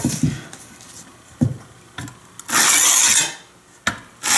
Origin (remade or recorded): recorded